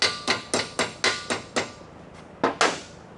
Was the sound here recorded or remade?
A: recorded